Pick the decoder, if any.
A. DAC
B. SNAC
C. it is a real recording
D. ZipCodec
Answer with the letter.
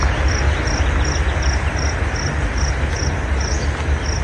C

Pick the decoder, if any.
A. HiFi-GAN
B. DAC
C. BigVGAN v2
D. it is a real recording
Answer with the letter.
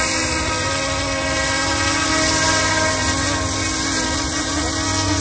D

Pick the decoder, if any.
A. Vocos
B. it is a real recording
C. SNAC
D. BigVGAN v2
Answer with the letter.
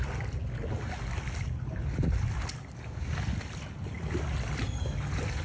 B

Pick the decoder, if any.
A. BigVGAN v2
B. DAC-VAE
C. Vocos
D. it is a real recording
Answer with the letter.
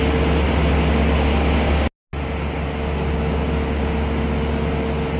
D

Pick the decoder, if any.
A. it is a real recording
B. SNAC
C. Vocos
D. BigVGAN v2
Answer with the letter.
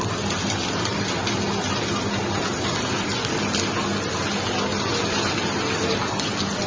A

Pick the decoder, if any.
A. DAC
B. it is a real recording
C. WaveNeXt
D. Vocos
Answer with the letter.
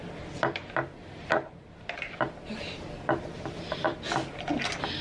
B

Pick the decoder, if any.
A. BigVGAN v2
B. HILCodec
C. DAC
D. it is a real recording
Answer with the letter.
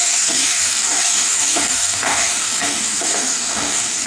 C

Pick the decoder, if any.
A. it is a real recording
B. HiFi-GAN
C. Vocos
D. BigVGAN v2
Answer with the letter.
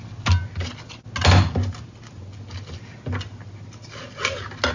A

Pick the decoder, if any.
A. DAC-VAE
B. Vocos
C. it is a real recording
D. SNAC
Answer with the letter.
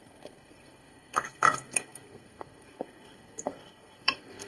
D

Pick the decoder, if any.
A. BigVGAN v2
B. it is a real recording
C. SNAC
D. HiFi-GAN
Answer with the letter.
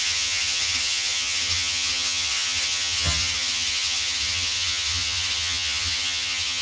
D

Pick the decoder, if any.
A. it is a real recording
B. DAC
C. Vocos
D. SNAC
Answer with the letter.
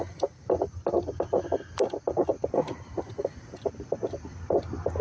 A